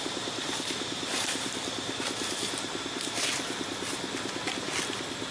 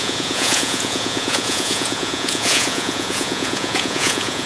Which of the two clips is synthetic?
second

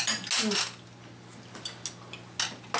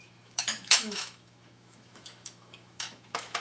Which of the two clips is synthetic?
second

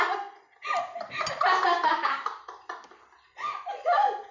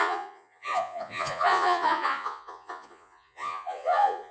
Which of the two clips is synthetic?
second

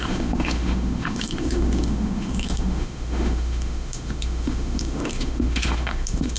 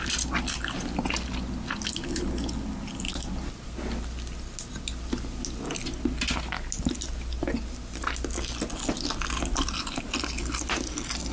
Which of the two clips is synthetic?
first